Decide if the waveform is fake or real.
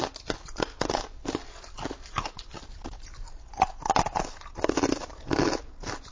real